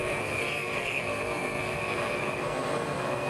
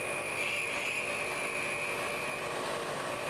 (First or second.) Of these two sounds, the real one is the second